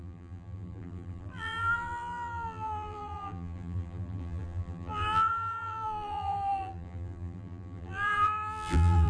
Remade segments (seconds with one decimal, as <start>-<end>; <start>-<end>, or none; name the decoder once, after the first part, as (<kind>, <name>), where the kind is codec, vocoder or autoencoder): 0.0-9.1 (vocoder, BigVGAN v2)

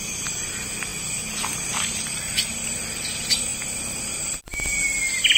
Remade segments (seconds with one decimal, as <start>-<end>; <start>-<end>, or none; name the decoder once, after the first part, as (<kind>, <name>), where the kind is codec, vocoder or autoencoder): 0.0-0.9 (vocoder, BigVGAN v2); 1.7-3.5; 4.4-5.4